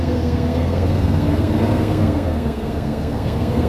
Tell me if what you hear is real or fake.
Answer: fake